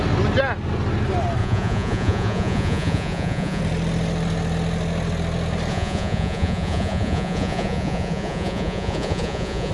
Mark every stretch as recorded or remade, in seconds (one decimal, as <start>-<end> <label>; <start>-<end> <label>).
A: 0.0-1.4 recorded; 1.4-3.6 remade; 3.6-5.7 recorded; 5.7-9.7 remade